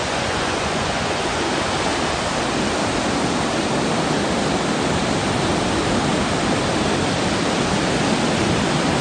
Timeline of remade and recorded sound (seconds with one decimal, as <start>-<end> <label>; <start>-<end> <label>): 0.0-1.5 remade; 1.5-9.0 recorded